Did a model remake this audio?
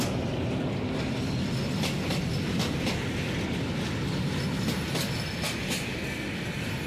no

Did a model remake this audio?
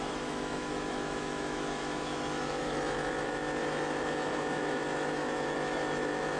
yes